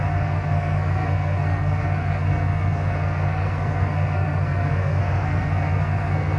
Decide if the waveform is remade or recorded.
remade